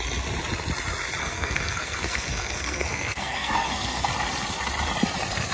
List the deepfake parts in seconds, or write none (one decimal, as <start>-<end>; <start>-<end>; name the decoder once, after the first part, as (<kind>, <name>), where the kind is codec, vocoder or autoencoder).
1.2-4.1 (codec, SNAC)